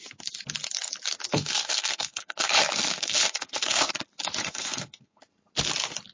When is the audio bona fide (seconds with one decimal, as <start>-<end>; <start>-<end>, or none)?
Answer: 0.0-1.3; 2.5-2.9; 3.9-4.4; 5.2-6.1